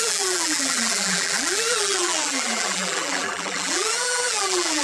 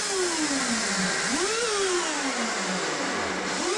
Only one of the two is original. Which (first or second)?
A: second